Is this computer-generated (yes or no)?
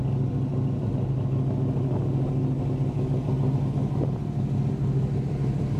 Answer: no